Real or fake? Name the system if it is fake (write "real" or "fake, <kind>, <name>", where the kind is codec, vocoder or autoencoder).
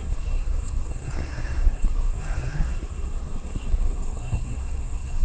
fake, codec, SNAC